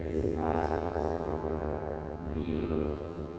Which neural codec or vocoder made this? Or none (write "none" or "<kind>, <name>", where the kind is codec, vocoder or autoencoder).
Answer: vocoder, HiFi-GAN